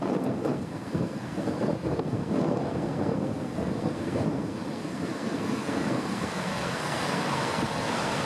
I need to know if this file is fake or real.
fake